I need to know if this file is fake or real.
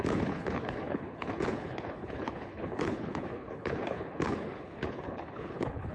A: fake